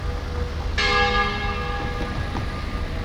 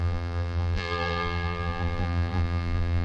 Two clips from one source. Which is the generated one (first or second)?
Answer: second